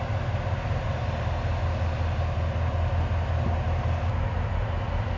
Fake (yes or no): no